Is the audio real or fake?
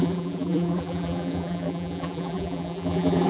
fake